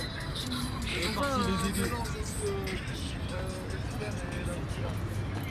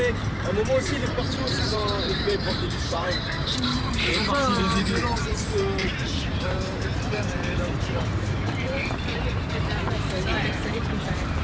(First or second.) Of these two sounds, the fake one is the second